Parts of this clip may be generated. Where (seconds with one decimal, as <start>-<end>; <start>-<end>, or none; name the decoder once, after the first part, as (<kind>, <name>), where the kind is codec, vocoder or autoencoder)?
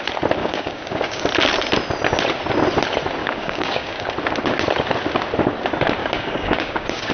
0.4-1.2 (codec, DAC); 3.2-4.1; 6.0-7.1